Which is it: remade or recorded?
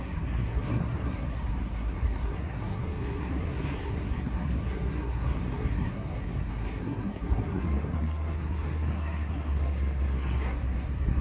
remade